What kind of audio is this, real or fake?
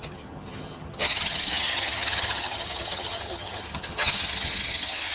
fake